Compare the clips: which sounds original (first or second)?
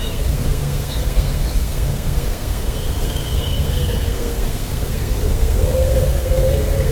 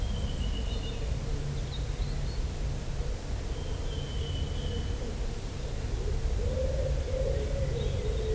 second